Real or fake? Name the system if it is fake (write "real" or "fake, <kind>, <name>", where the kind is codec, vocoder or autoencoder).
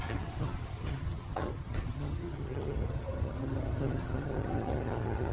fake, vocoder, HiFi-GAN